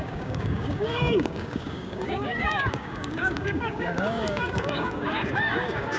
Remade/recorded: remade